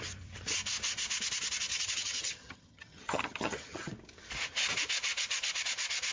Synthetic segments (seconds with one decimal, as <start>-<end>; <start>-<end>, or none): 1.7-3.9